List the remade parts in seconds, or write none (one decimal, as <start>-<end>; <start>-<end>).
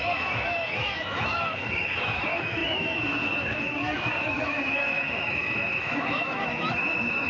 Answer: 0.0-7.3